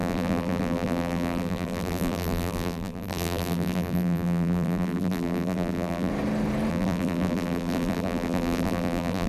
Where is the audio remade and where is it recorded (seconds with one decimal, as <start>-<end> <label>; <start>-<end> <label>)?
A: 0.0-6.1 remade; 6.1-6.7 recorded; 6.7-9.3 remade

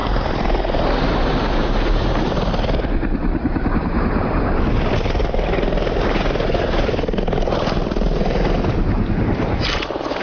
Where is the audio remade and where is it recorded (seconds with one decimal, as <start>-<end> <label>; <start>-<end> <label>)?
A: 0.0-2.5 remade; 2.5-3.2 recorded; 3.2-4.0 remade; 4.0-10.2 recorded